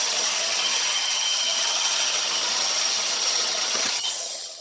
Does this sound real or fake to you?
fake